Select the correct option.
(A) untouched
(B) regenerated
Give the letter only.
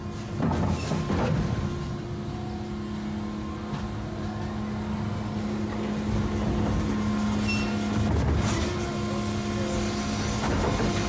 A